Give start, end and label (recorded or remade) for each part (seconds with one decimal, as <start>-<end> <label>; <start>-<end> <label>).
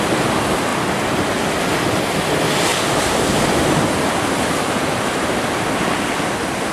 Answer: 0.0-6.7 recorded